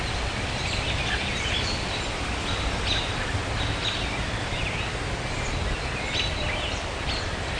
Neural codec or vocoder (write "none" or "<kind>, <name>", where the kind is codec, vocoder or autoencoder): none